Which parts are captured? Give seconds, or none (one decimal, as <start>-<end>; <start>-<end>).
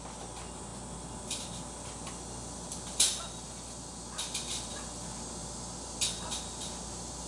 0.0-7.3